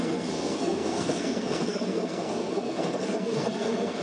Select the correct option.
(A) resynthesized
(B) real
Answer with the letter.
A